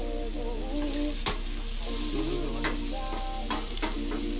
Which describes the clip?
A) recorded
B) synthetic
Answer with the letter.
A